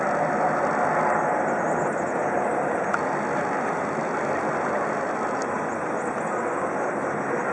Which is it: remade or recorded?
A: recorded